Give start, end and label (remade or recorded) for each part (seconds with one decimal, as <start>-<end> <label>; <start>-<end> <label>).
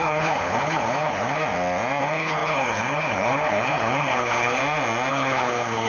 0.0-1.4 remade; 1.4-2.0 recorded; 2.0-4.6 remade; 4.6-5.1 recorded; 5.1-5.9 remade